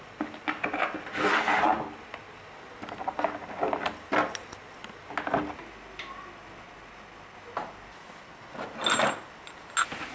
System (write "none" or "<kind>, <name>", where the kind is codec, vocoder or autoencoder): none